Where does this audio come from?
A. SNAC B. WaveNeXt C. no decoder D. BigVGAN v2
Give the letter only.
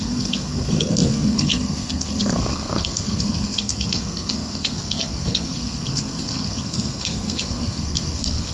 A